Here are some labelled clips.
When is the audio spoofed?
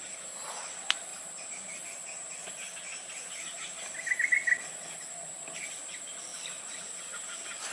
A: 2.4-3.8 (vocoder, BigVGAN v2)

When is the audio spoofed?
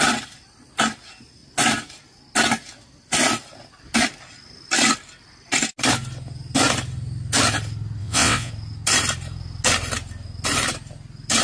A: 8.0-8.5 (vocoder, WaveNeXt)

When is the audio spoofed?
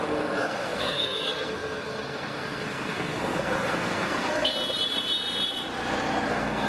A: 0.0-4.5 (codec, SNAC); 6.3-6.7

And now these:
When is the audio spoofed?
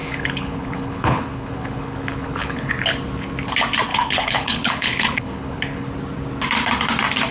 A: 0.0-2.7 (codec, HILCodec); 3.9-5.9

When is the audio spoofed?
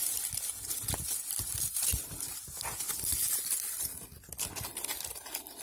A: none